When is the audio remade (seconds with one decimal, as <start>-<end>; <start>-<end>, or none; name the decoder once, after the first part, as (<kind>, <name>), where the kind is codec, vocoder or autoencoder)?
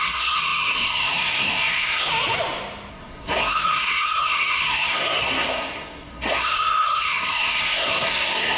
0.0-2.1 (codec, SNAC); 2.9-8.6